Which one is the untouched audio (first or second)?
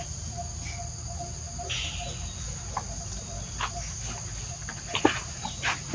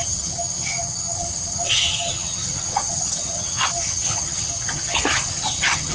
first